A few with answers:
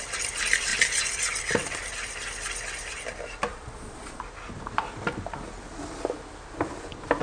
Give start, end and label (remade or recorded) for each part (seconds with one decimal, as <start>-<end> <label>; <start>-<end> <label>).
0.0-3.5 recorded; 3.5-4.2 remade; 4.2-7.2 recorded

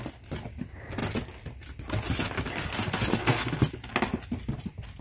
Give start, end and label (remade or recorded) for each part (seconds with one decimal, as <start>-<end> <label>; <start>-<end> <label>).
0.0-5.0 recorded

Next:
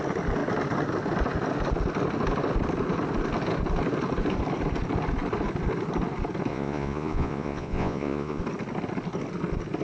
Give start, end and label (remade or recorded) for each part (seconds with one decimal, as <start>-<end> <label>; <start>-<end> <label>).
0.0-6.5 recorded; 6.5-8.4 remade; 8.4-9.8 recorded

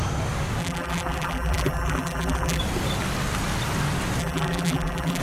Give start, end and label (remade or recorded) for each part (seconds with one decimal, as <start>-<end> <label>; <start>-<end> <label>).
0.0-0.6 recorded; 0.6-2.6 remade; 2.6-4.2 recorded; 4.2-5.2 remade

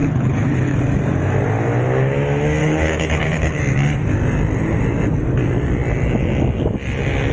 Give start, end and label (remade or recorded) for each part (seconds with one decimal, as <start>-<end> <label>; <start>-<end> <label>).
0.0-0.8 remade; 0.8-2.6 recorded; 2.6-3.6 remade; 3.6-7.3 recorded

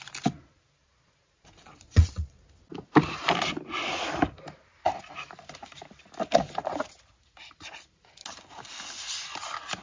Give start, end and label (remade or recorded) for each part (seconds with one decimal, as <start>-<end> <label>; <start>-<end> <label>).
0.0-0.8 recorded; 0.8-2.4 remade; 2.4-9.8 recorded

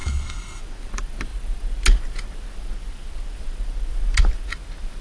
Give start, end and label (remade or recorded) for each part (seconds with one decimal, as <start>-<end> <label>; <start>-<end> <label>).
0.0-0.6 remade; 0.6-5.0 recorded

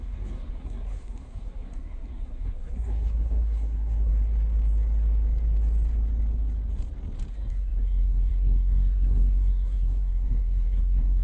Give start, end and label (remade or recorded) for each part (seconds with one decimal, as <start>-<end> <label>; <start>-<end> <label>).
0.0-4.1 remade; 4.1-7.3 recorded; 7.3-11.2 remade